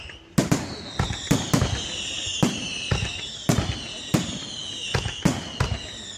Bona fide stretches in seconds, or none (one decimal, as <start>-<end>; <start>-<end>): 0.0-6.2